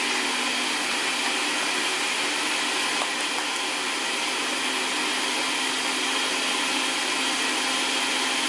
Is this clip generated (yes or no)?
no